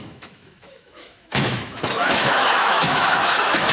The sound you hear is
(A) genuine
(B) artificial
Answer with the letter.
B